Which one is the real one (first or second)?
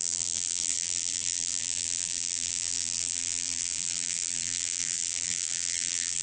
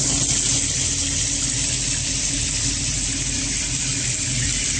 second